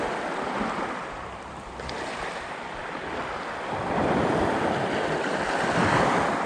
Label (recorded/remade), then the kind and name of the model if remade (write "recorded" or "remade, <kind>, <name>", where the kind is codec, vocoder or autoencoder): remade, vocoder, BigVGAN v2